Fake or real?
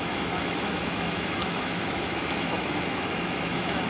fake